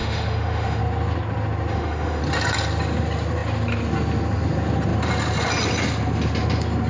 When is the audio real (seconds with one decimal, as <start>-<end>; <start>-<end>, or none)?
0.8-1.7; 2.2-6.9